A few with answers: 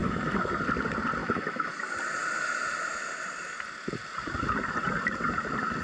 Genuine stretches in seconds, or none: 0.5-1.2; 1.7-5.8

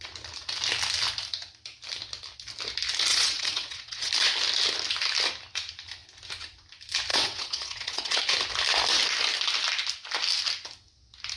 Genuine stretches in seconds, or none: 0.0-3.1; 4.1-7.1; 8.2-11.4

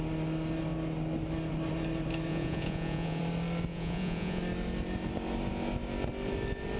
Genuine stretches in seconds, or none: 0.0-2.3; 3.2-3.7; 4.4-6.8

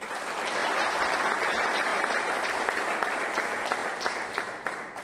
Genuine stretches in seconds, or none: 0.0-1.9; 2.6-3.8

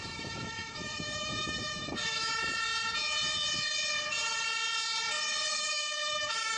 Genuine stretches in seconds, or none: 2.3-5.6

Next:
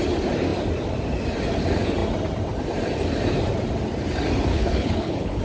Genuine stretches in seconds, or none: 0.0-4.5